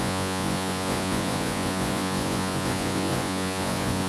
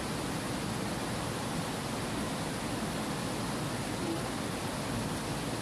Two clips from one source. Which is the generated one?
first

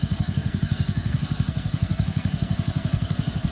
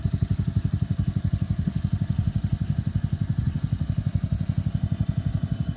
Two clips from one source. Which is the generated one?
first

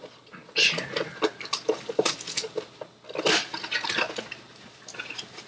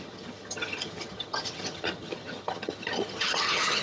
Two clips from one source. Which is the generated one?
second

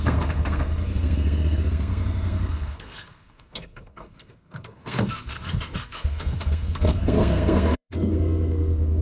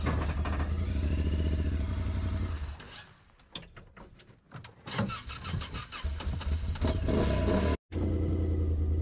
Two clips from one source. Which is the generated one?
first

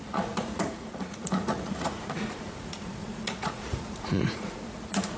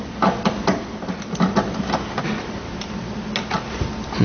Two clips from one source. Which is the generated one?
first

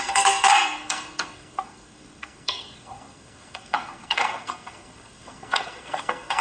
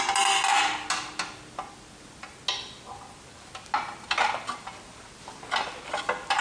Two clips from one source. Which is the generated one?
first